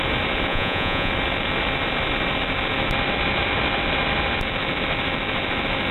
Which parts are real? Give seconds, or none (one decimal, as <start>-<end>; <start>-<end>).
0.0-0.5; 1.1-5.9